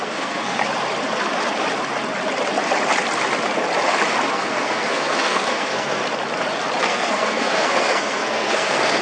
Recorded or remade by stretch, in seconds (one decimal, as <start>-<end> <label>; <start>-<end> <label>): 0.0-0.6 remade; 0.6-4.3 recorded; 4.3-6.0 remade; 6.0-6.8 recorded; 6.8-9.0 remade